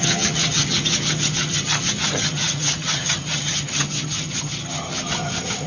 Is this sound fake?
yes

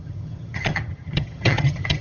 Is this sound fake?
yes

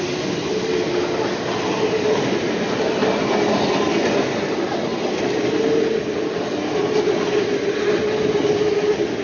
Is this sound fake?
no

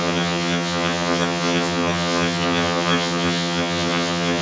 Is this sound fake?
yes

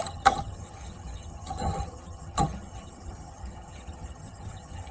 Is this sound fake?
yes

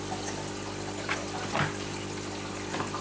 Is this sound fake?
no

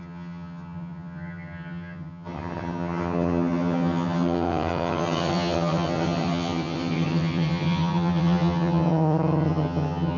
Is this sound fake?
yes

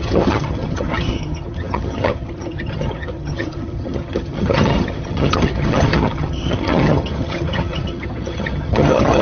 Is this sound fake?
yes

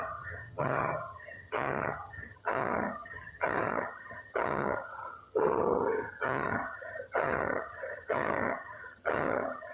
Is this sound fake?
yes